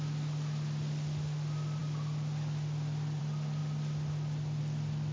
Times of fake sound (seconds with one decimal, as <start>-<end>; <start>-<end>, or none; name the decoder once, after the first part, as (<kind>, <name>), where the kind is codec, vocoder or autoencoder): none